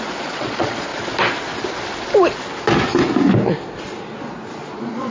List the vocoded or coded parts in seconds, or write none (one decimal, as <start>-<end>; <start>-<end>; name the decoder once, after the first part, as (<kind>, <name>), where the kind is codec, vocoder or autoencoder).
0.0-0.9 (vocoder, Vocos); 4.0-5.1